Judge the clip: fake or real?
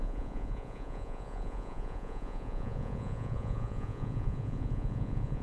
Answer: fake